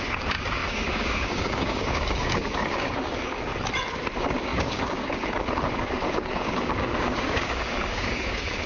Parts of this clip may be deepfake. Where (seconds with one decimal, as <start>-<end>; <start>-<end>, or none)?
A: 0.0-3.5; 4.0-8.7